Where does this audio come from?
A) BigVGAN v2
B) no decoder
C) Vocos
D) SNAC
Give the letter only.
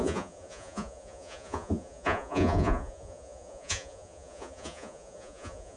C